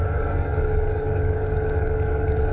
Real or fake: fake